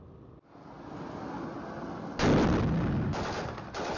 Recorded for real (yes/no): yes